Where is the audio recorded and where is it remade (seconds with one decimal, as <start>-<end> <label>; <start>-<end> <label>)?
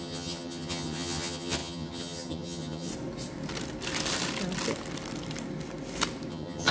0.0-2.9 remade; 2.9-6.3 recorded; 6.3-6.7 remade